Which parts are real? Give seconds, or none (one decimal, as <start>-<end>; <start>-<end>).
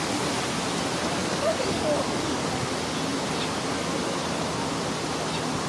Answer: 0.0-1.2; 2.5-5.7